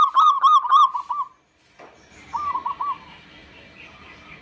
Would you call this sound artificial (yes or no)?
no